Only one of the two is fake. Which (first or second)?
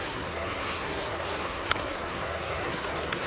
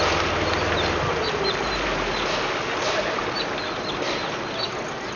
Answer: first